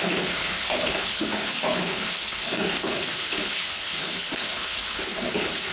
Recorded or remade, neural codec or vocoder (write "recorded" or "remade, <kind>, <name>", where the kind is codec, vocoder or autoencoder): remade, codec, HILCodec